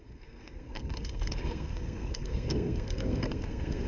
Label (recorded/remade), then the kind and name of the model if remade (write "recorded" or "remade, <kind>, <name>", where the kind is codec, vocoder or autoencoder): remade, codec, SNAC